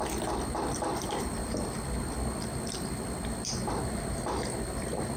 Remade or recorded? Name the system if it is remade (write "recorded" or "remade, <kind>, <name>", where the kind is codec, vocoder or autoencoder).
recorded